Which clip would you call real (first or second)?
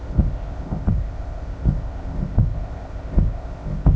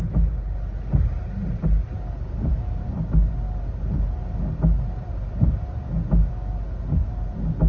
second